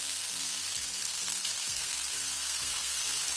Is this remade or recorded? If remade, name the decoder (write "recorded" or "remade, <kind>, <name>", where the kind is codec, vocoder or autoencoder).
remade, codec, SNAC